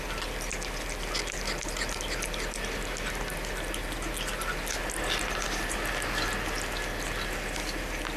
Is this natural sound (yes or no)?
yes